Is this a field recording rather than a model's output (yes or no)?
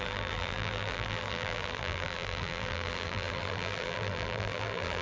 no